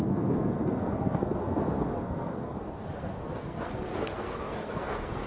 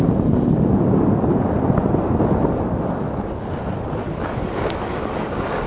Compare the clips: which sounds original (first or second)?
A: second